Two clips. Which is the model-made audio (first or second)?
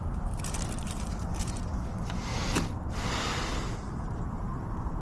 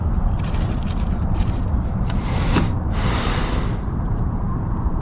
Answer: second